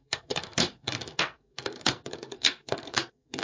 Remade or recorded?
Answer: remade